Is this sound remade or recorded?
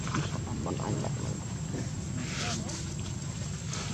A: recorded